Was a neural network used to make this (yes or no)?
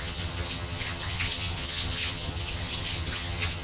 yes